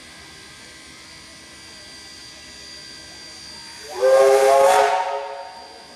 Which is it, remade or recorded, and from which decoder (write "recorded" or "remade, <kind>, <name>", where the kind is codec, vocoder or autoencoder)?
recorded